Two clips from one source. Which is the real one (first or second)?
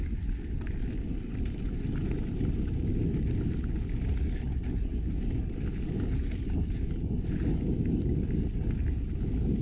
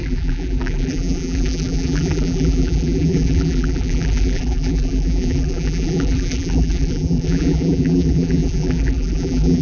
first